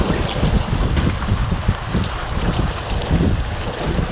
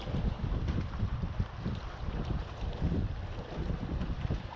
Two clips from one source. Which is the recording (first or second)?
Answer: first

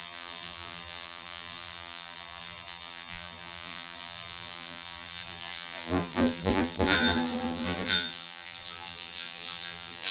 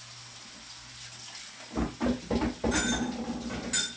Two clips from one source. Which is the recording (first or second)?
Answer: second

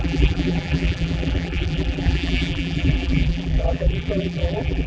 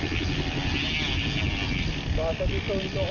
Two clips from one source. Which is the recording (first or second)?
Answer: second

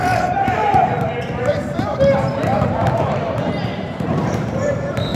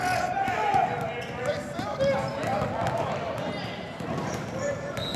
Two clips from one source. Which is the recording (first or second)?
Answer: second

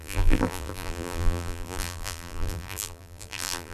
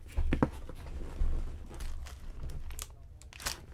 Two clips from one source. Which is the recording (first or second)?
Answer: second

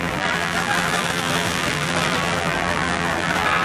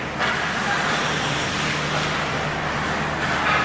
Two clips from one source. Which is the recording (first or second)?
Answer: second